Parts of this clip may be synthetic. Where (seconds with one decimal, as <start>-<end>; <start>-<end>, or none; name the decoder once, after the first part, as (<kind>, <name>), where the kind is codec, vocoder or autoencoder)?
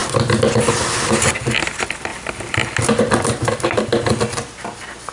none